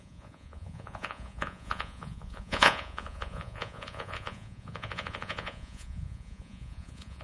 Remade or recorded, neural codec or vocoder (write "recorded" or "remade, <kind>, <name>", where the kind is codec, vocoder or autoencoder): remade, vocoder, Vocos